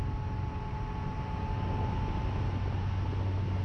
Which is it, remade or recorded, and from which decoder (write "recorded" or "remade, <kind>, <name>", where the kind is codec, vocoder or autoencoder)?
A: recorded